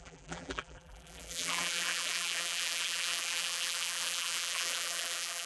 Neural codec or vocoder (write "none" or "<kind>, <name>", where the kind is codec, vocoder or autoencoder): vocoder, BigVGAN v2